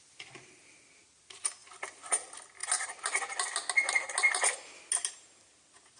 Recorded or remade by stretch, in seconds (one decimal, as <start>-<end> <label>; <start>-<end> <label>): 0.0-6.0 recorded